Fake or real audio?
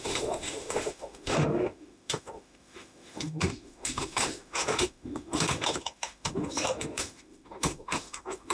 fake